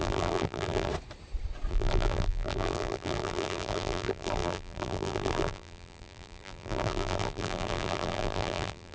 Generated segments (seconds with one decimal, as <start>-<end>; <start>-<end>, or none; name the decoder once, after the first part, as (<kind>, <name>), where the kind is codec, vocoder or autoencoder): 0.0-0.9 (vocoder, BigVGAN v2); 1.7-8.9